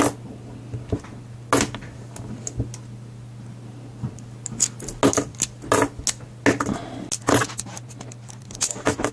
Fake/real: real